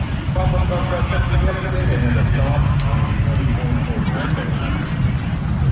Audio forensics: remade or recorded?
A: recorded